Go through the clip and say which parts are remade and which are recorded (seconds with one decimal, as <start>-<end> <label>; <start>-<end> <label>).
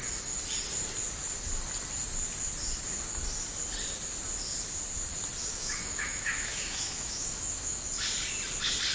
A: 0.0-5.5 recorded; 5.5-7.9 remade; 7.9-8.9 recorded